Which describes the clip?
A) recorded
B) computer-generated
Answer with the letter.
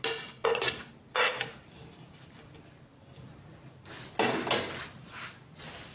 A